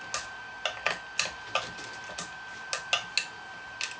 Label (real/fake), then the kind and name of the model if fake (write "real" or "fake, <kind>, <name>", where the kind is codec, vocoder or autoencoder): real